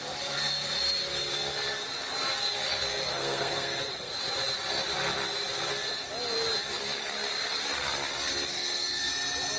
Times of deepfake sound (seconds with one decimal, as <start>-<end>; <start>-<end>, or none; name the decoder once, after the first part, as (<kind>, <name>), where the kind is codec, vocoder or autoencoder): 2.9-4.1 (codec, SNAC); 8.5-9.1